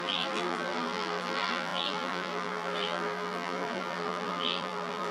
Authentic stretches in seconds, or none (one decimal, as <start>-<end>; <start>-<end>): none